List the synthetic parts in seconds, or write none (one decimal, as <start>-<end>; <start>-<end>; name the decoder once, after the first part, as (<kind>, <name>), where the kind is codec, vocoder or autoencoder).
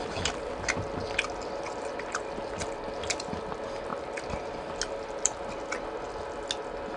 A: none